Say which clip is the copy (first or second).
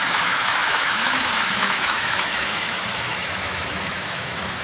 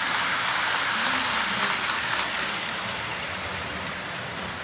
first